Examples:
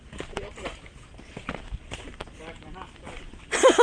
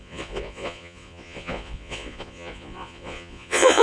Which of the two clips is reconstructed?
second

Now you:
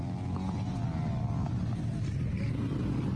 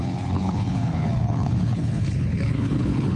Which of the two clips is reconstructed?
second